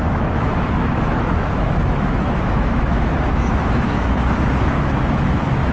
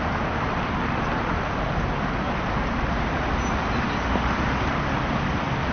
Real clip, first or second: second